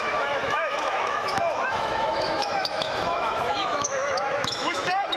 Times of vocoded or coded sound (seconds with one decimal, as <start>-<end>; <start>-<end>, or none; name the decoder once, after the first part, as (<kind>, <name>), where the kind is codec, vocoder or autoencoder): 0.0-5.2 (autoencoder, DAC-VAE)